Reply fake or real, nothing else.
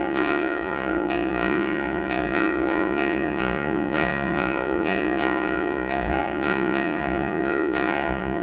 fake